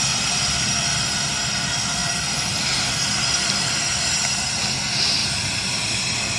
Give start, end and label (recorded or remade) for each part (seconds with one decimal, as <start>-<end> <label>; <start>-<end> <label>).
0.0-2.0 recorded; 2.0-4.8 remade; 4.8-5.2 recorded; 5.2-6.0 remade; 6.0-6.4 recorded